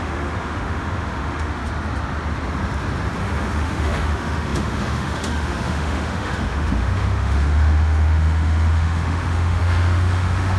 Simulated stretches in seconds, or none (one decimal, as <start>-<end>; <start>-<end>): 0.0-1.6; 3.2-10.6